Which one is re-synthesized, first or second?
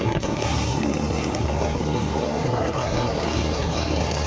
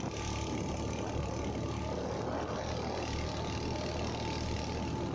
first